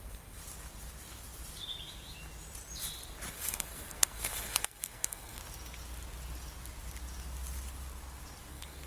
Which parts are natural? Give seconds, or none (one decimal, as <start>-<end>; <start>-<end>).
0.4-3.3; 5.4-8.5